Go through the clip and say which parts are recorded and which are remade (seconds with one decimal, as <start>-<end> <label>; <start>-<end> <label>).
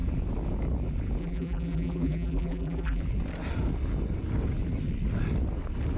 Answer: 0.0-1.2 recorded; 1.2-3.0 remade; 3.0-6.0 recorded